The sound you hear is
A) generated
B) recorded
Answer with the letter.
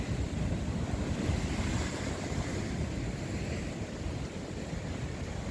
B